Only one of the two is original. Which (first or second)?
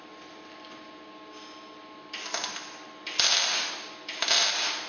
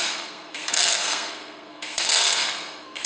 first